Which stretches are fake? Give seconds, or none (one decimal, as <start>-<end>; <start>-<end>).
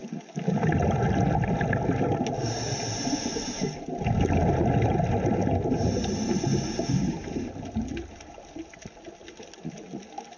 none